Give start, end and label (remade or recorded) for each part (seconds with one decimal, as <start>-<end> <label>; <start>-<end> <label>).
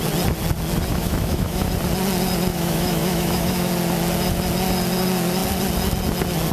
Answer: 0.0-0.9 recorded; 0.9-1.7 remade; 1.7-2.5 recorded; 2.5-3.7 remade; 3.7-6.5 recorded